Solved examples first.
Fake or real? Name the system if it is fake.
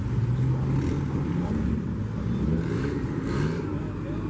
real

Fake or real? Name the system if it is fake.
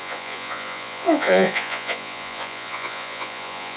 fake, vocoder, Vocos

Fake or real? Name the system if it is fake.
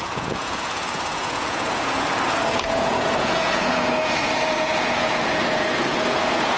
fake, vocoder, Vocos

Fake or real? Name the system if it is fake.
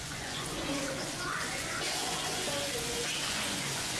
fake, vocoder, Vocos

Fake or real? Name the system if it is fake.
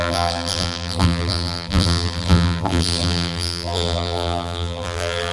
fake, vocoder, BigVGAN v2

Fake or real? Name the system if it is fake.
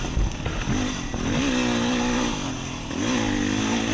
real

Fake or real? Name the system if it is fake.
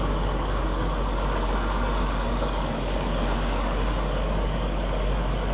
fake, codec, DAC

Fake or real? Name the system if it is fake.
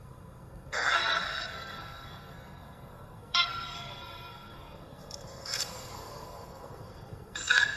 fake, codec, SNAC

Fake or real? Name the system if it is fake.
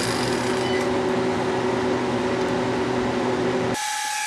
real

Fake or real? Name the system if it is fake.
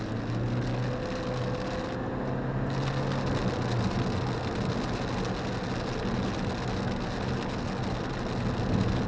real